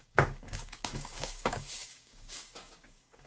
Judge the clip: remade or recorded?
remade